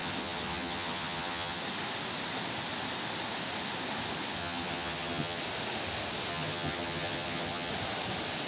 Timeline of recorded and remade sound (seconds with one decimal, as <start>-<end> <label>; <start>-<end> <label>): 0.0-1.6 remade; 1.6-4.4 recorded; 4.4-5.4 remade; 5.4-6.3 recorded; 6.3-7.7 remade; 7.7-8.5 recorded

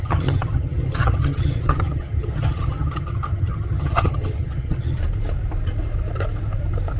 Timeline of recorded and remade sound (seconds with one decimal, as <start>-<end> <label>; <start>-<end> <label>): 0.0-5.0 remade; 5.0-7.0 recorded

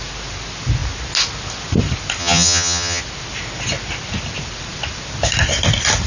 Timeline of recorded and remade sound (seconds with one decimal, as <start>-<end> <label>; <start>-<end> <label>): 0.0-2.2 recorded; 2.2-3.0 remade; 3.0-6.1 recorded

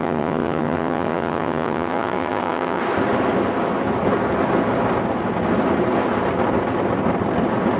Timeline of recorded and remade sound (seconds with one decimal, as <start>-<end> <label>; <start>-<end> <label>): 0.0-2.8 remade; 2.8-7.8 recorded

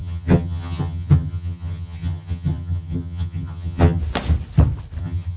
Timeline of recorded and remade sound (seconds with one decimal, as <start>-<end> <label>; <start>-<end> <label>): 0.0-4.0 remade; 4.0-5.0 recorded; 5.0-5.4 remade